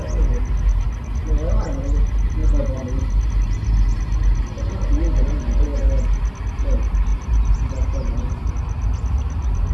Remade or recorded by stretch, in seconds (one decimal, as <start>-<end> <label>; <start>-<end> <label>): 0.0-7.1 recorded; 7.1-8.5 remade; 8.5-9.7 recorded